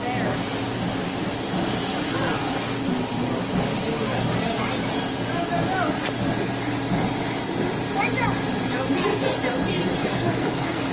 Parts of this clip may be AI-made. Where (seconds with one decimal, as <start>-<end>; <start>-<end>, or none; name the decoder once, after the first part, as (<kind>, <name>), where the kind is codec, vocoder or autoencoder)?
10.0-10.9 (codec, SNAC)